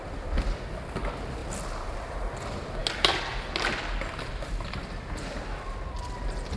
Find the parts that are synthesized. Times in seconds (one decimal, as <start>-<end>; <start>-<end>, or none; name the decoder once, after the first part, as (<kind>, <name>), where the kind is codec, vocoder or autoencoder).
none